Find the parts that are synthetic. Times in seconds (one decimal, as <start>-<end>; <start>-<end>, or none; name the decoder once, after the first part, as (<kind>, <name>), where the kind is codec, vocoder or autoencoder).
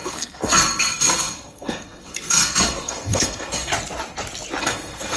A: 0.0-3.7 (codec, SNAC); 4.6-5.2